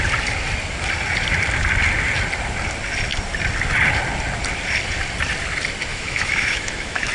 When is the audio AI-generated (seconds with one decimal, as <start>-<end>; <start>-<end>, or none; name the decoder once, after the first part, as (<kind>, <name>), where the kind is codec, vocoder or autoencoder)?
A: 5.9-7.1 (autoencoder, DAC-VAE)